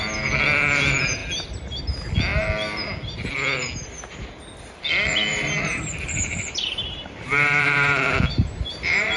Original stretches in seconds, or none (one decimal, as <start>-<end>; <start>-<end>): 0.0-5.3